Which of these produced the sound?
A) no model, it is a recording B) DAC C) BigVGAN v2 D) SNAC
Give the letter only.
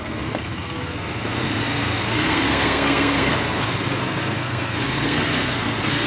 D